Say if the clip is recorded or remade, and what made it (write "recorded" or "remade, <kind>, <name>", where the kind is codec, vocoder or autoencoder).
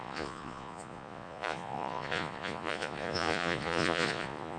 remade, vocoder, Vocos